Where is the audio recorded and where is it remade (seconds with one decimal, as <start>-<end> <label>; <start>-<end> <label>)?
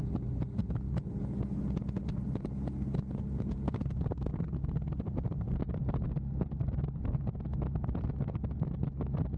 0.0-9.4 recorded